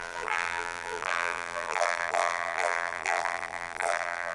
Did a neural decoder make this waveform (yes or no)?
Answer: yes